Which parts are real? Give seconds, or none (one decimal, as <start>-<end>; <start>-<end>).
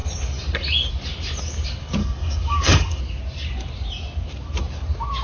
0.0-2.0; 3.0-5.2